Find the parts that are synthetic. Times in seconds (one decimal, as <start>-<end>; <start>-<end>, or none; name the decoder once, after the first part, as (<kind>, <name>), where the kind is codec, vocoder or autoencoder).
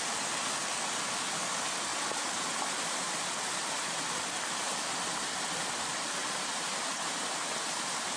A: 1.9-3.2 (vocoder, BigVGAN v2); 6.2-8.2